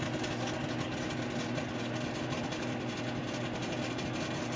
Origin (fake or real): real